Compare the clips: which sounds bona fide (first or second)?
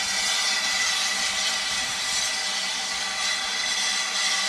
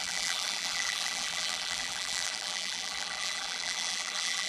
first